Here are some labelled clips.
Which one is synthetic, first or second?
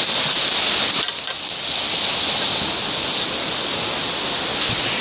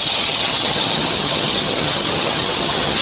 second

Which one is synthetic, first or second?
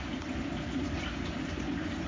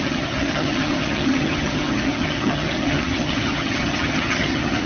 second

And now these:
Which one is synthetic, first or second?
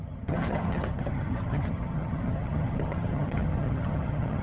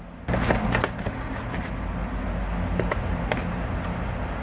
first